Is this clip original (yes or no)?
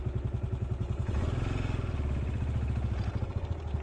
yes